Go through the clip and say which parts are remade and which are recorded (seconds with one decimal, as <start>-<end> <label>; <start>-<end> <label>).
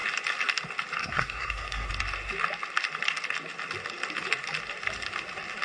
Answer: 0.0-1.0 recorded; 1.0-1.9 remade; 1.9-5.6 recorded